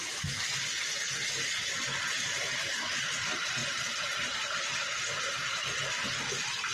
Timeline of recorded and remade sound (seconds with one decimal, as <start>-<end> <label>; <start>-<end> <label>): 0.0-1.2 recorded; 1.2-1.8 remade; 1.8-3.6 recorded; 3.6-5.8 remade; 5.8-6.7 recorded